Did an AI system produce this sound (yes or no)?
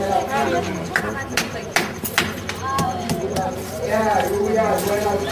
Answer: no